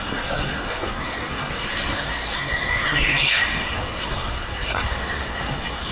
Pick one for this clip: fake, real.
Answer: fake